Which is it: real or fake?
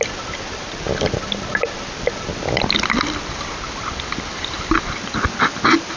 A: real